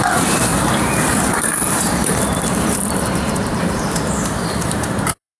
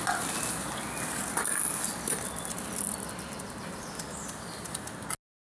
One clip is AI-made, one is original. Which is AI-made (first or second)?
first